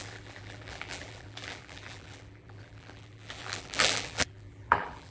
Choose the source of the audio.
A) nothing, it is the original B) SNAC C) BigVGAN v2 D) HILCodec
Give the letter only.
C